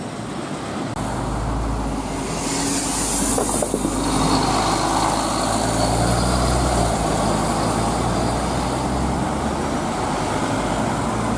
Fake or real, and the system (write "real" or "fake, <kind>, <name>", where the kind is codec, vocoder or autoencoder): real